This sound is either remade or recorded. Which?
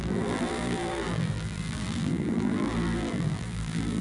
remade